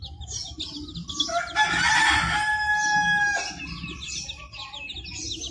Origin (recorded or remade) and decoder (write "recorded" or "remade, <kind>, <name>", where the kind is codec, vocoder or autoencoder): recorded